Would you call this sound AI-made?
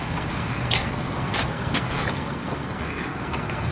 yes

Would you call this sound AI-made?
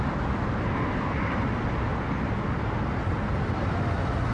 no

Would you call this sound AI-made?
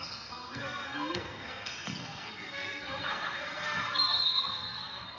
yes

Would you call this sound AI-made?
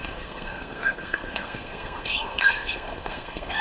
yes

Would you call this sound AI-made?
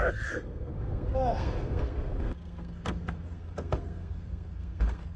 yes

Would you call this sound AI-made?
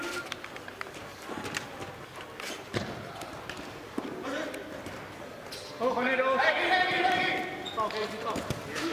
no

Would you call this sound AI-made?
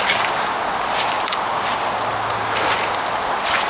no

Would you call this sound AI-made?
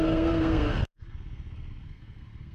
yes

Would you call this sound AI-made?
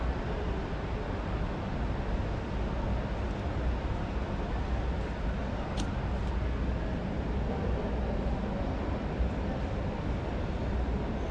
no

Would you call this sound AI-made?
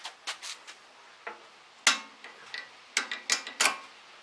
no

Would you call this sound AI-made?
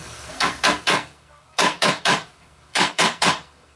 yes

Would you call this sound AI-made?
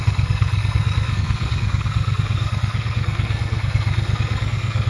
yes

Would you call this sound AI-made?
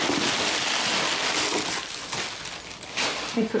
no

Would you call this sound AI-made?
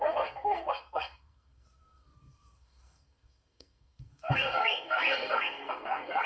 yes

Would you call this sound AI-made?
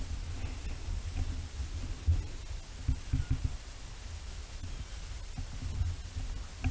no